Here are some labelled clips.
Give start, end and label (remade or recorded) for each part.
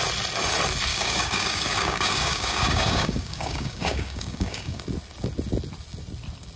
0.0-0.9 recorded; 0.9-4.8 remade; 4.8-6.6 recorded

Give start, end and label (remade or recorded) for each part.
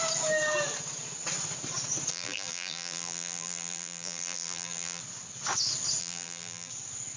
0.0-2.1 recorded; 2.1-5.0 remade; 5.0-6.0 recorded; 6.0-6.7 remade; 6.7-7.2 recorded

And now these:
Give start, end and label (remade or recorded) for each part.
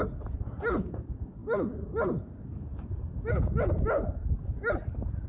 0.0-5.3 recorded